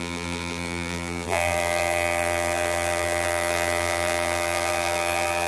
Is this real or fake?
fake